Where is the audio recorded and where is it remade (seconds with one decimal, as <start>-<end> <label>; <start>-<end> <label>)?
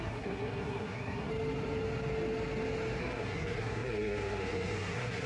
0.0-1.3 remade; 1.3-3.0 recorded; 3.0-5.3 remade